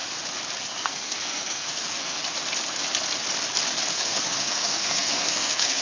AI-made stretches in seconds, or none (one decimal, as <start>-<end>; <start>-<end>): 0.6-2.2; 3.9-5.8